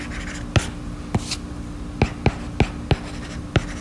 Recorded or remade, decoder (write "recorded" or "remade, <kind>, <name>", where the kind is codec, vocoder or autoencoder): recorded